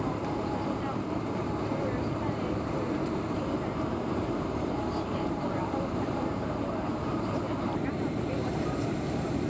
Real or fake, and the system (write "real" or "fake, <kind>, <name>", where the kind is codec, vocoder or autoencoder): fake, vocoder, BigVGAN v2